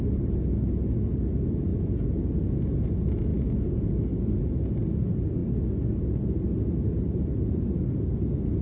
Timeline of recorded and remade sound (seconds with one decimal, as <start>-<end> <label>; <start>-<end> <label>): 0.0-8.6 recorded